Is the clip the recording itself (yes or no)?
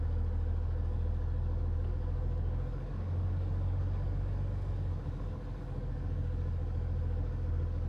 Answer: no